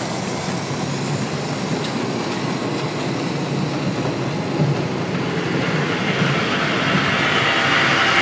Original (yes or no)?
yes